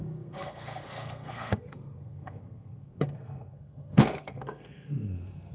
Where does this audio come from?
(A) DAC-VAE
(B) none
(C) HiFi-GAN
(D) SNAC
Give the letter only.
D